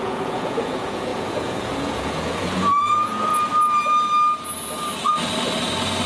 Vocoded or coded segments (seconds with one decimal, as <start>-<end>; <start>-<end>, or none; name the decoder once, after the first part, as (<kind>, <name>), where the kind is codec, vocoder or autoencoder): 0.0-3.3 (vocoder, Vocos)